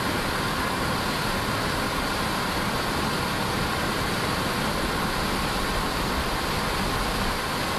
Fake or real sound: real